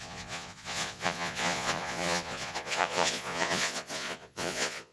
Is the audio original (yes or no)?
no